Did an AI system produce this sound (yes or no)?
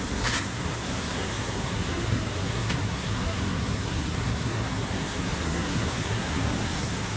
yes